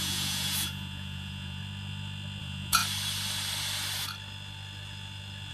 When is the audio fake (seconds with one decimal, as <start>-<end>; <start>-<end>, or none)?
0.0-1.6; 2.4-2.8